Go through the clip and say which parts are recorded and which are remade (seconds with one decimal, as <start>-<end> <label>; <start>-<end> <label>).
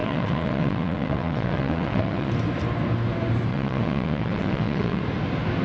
0.0-2.3 remade; 2.3-3.5 recorded; 3.5-5.0 remade; 5.0-5.6 recorded